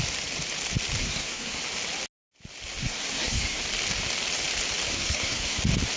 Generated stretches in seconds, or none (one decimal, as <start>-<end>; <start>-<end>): 1.0-1.6; 2.8-3.6; 4.9-5.6

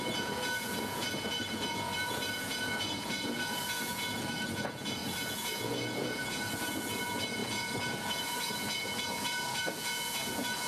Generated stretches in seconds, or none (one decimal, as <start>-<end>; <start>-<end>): 0.0-10.7

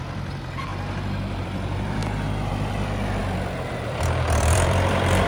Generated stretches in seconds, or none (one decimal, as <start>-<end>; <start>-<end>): 0.0-0.7; 1.4-2.0; 2.5-5.3

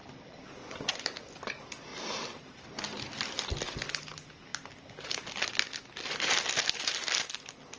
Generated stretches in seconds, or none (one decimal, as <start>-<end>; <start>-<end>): 0.0-0.9; 1.9-3.0

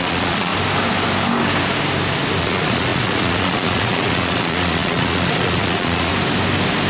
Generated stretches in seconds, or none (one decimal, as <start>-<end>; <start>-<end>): 0.0-0.5; 2.4-6.1